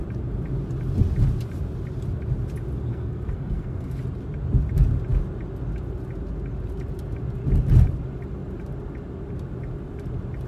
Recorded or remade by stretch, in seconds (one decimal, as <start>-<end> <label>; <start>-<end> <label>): 0.0-2.9 recorded; 2.9-4.0 remade; 4.0-10.5 recorded